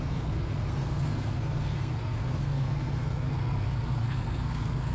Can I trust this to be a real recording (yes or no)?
no